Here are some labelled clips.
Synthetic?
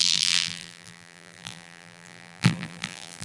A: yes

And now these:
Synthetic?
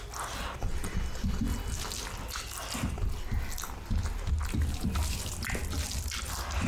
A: no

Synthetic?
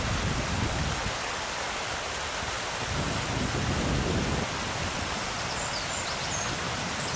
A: no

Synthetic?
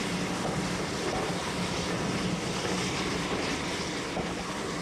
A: no